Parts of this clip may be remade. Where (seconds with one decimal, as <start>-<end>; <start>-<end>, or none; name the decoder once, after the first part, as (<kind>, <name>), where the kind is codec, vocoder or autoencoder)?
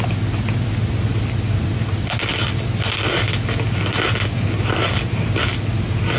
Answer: none